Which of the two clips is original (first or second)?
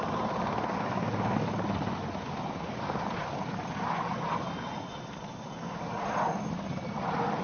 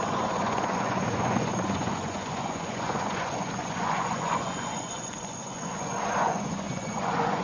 first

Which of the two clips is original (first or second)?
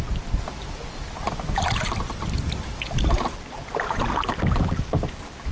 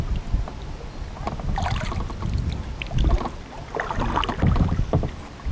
second